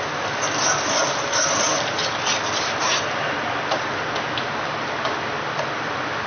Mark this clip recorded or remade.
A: remade